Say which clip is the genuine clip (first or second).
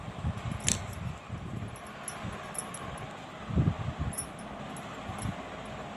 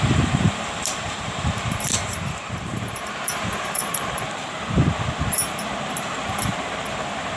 first